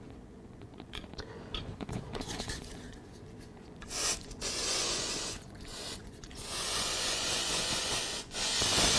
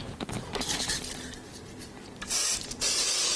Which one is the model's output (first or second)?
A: first